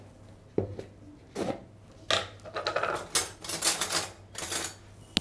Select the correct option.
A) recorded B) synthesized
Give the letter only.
A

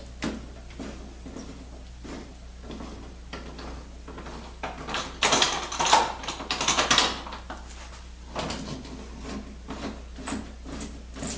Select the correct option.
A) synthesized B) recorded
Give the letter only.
B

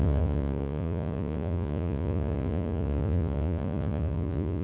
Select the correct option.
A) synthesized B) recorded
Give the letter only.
A